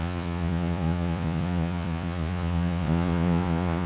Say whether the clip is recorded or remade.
remade